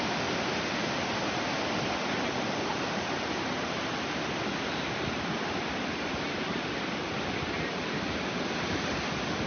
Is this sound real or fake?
real